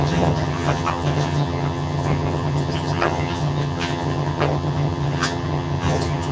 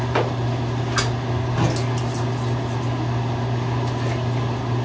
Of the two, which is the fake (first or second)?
first